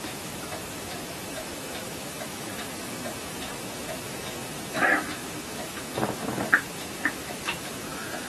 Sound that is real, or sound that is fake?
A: fake